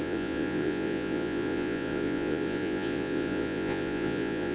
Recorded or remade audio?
remade